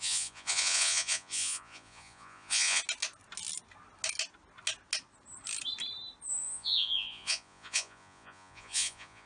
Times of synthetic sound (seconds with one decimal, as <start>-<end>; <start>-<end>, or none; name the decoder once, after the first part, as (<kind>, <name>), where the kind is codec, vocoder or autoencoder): 0.0-2.8 (vocoder, Vocos); 6.3-9.3